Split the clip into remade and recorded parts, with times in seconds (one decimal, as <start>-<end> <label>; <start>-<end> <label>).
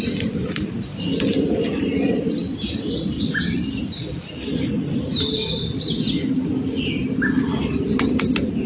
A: 0.0-8.7 recorded